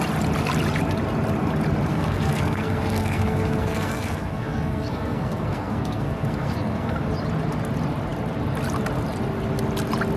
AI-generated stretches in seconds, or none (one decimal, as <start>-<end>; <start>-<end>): 1.9-7.0